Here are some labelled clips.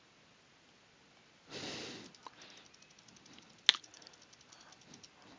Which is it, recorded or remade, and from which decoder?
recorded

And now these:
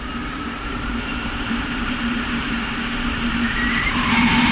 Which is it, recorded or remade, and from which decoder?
remade, vocoder, BigVGAN v2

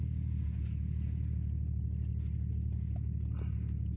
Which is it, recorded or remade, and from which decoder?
recorded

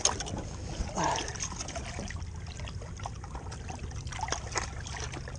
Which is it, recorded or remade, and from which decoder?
recorded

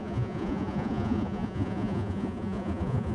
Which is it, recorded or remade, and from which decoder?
remade, vocoder, Vocos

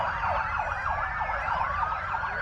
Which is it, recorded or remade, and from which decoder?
recorded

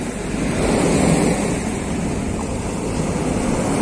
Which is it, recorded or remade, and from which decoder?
recorded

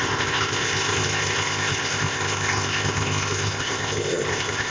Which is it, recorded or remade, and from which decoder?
remade, codec, ZipCodec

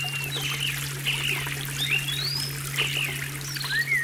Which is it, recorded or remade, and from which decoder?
recorded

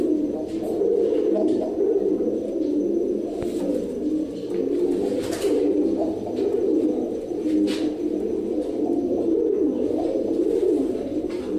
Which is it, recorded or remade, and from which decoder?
recorded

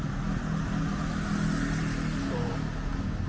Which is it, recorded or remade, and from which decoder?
recorded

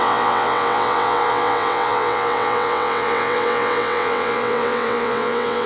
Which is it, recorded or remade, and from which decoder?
remade, vocoder, WaveNeXt